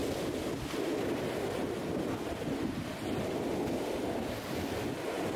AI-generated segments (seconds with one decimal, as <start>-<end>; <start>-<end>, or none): none